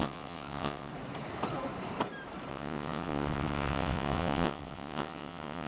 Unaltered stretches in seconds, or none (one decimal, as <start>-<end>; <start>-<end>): 0.9-2.5